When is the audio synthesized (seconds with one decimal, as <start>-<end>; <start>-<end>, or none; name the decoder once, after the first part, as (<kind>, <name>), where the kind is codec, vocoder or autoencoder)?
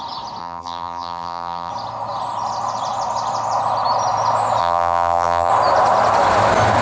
0.4-1.7 (vocoder, BigVGAN v2); 4.6-5.5